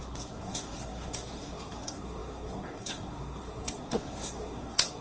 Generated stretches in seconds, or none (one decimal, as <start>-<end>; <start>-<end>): 0.0-5.0